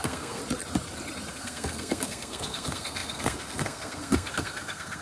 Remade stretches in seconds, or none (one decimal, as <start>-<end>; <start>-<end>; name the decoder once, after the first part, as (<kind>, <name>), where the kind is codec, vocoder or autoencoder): 0.0-0.4 (codec, SNAC); 1.3-5.0